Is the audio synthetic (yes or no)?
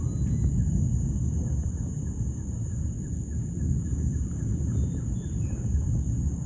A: no